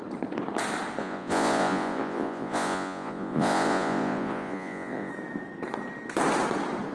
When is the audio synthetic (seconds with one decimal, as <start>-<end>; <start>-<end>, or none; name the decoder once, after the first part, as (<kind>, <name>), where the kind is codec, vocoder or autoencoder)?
1.0-5.1 (vocoder, Vocos)